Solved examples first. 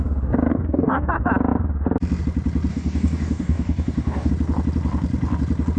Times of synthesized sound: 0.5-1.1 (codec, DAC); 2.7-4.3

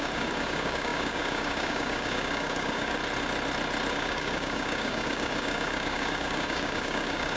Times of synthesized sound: 0.0-3.0 (codec, DAC); 3.9-7.4

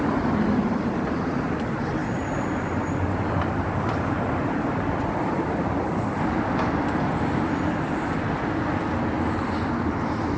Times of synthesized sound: none

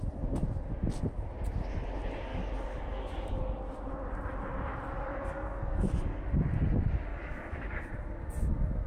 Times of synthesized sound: 2.3-3.4 (codec, DAC); 5.1-6.2; 7.1-7.9

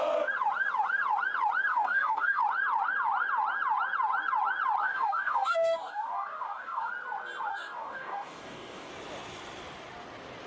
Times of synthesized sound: 1.7-2.4 (codec, DAC); 4.8-6.9; 7.5-8.9

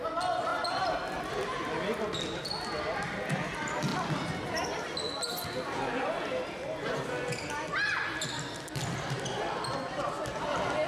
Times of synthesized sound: none